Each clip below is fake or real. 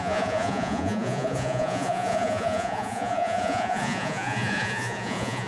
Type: fake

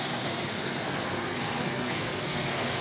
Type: fake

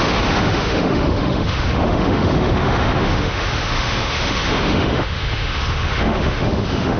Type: fake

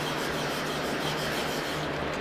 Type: real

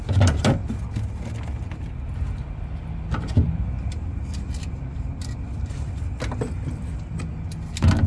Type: real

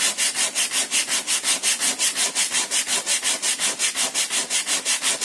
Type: real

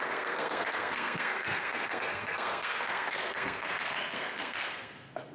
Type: fake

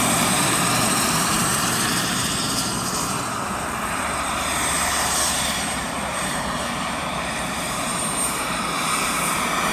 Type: fake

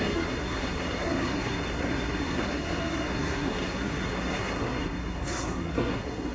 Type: fake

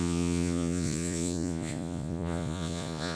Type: fake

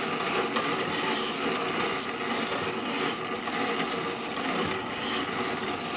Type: real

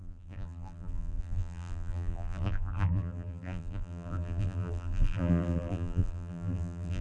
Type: fake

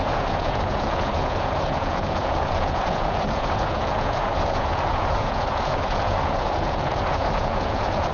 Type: fake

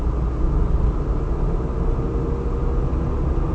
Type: real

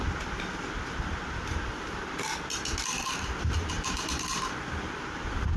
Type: real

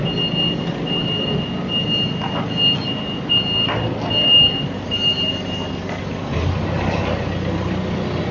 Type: real